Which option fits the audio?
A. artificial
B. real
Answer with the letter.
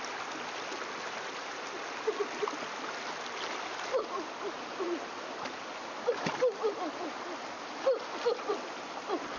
B